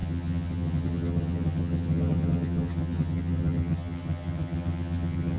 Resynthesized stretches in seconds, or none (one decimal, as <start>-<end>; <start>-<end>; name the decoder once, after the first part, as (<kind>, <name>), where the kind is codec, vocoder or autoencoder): 0.0-5.4 (vocoder, HiFi-GAN)